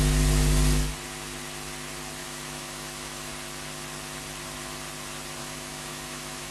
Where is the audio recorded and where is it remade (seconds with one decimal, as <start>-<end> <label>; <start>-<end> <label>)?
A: 0.0-2.2 recorded; 2.2-3.3 remade; 3.3-5.4 recorded; 5.4-6.5 remade